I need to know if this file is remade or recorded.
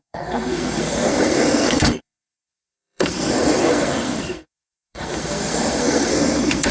remade